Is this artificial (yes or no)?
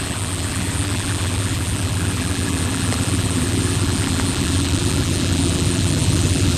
yes